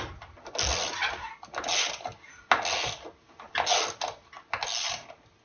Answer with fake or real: real